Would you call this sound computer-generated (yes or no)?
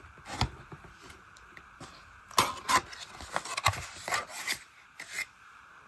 no